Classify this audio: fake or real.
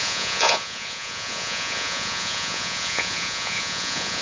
fake